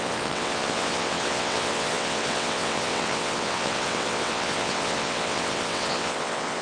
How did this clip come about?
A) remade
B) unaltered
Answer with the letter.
A